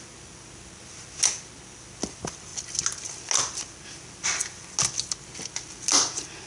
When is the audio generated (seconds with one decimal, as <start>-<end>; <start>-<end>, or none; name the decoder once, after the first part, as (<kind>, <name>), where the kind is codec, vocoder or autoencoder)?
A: none